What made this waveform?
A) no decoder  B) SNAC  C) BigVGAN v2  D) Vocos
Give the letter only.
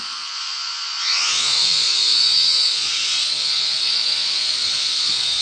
D